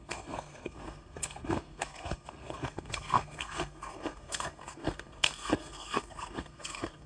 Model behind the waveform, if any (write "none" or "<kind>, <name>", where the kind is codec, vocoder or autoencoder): codec, SNAC